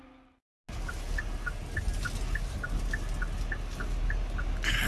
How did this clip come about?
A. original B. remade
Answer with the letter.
A